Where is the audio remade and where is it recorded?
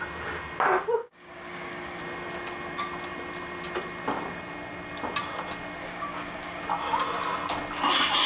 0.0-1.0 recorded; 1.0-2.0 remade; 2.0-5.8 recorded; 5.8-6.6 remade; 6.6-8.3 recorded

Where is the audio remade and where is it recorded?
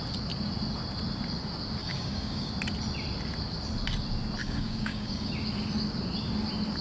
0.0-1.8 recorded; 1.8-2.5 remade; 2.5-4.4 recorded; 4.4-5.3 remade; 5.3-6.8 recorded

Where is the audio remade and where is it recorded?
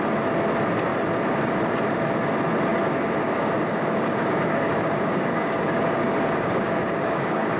0.0-2.7 recorded; 2.7-7.6 remade